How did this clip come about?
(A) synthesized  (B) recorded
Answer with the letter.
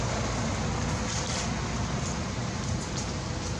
B